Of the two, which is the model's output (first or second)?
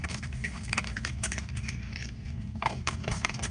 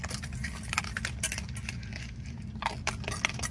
first